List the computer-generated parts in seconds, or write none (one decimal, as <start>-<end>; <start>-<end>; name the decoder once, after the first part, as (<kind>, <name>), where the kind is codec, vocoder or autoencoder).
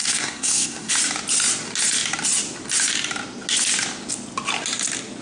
0.0-0.9 (codec, SNAC)